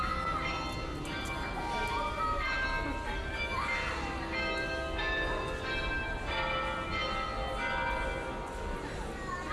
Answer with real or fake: real